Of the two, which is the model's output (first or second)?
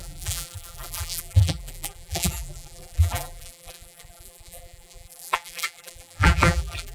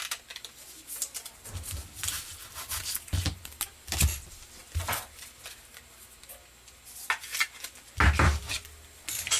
first